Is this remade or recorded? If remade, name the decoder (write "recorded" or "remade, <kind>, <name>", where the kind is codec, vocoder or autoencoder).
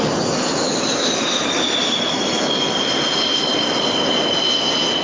recorded